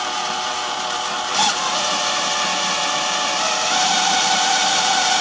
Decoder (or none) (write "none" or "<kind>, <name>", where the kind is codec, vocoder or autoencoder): vocoder, BigVGAN v2